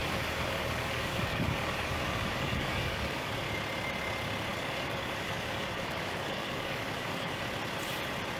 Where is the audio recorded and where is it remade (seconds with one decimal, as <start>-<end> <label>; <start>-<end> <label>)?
0.0-3.3 remade; 3.3-4.5 recorded; 4.5-7.4 remade; 7.4-8.4 recorded

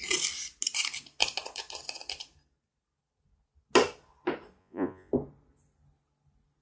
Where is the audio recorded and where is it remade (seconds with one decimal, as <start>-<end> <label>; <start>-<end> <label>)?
0.0-4.6 recorded; 4.6-5.1 remade; 5.1-6.6 recorded

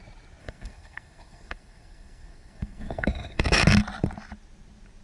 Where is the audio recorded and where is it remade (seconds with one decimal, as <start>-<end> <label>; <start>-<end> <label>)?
0.0-0.4 recorded; 0.4-3.4 remade; 3.4-5.0 recorded